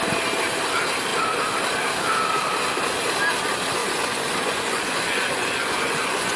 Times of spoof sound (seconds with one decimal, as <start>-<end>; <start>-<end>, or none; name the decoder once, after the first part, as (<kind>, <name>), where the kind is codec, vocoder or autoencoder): 3.8-6.4 (vocoder, Vocos)